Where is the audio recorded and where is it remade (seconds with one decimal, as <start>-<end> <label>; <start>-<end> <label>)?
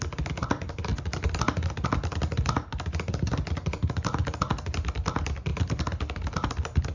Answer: 0.0-6.9 recorded